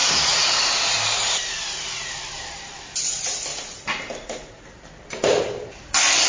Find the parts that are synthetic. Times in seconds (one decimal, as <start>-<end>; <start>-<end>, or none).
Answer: 0.0-3.0; 3.5-6.3